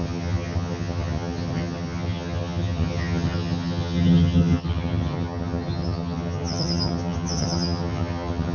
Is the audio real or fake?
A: fake